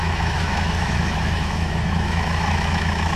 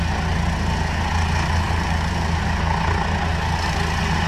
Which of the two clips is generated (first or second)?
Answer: first